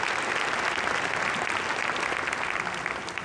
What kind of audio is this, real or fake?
real